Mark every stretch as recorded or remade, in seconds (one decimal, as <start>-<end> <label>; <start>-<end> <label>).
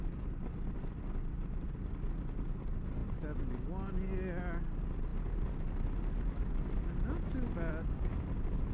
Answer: 0.0-8.7 recorded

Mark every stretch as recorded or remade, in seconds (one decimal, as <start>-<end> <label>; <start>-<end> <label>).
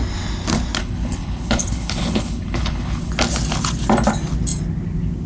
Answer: 0.0-0.8 recorded; 0.8-3.1 remade; 3.1-5.3 recorded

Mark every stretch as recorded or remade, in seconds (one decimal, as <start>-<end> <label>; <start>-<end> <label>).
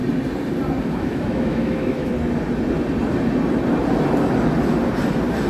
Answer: 0.0-0.8 recorded; 0.8-2.1 remade; 2.1-5.5 recorded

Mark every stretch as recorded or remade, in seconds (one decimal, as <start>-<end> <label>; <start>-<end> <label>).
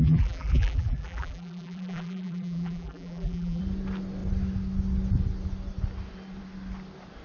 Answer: 0.0-3.6 remade; 3.6-7.2 recorded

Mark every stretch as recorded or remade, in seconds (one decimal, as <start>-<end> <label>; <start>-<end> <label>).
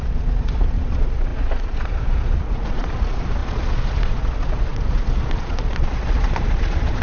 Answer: 0.0-7.0 remade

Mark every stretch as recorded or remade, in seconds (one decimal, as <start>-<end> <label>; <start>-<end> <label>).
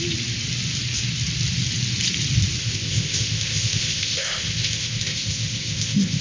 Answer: 0.0-2.6 recorded; 2.6-6.2 remade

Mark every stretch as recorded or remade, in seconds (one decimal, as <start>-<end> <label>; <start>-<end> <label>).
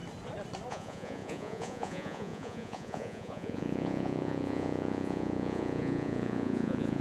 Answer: 0.0-0.7 recorded; 0.7-7.0 remade